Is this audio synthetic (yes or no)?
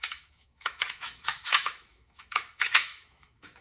yes